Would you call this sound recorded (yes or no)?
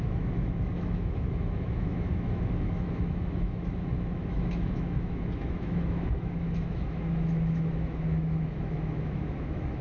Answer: no